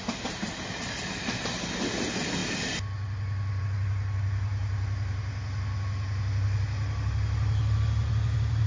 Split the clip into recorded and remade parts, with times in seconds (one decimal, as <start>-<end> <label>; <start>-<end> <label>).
0.0-8.7 recorded